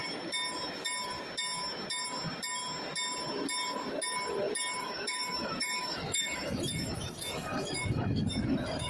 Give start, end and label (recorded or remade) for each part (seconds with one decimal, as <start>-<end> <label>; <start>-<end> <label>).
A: 0.0-4.8 recorded; 4.8-8.9 remade